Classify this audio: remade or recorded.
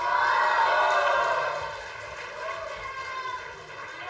recorded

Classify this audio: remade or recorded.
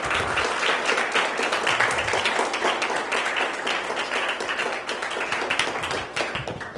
recorded